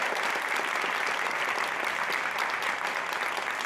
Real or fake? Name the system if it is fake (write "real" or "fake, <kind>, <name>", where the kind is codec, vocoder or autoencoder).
real